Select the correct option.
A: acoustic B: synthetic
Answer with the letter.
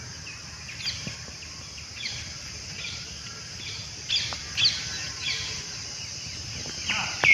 A